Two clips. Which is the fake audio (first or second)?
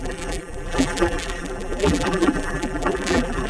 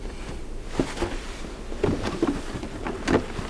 first